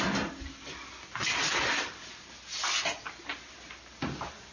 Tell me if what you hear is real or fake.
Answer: real